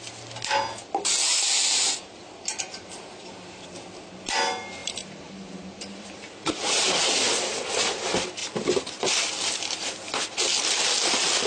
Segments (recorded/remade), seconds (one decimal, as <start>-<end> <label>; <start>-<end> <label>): 0.0-1.2 recorded; 1.2-2.6 remade; 2.6-11.5 recorded